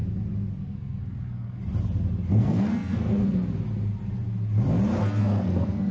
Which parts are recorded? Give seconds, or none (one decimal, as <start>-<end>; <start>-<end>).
0.0-0.6; 1.6-2.3; 3.4-5.0